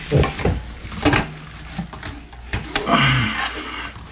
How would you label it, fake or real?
real